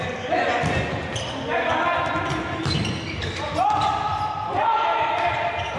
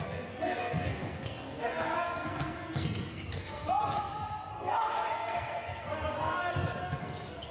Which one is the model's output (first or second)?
second